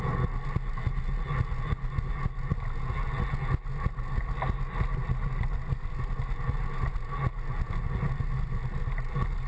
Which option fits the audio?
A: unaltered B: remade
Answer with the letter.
A